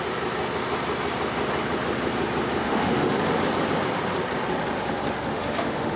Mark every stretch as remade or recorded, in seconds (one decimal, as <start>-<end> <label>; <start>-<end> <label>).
0.0-2.6 recorded; 2.6-3.2 remade; 3.2-5.3 recorded; 5.3-6.0 remade